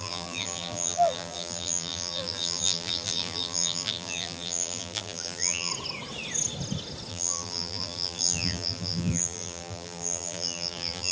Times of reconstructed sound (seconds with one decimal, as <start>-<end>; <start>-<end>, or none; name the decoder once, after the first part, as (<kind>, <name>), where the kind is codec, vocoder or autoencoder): 0.0-5.7 (vocoder, BigVGAN v2); 7.1-11.1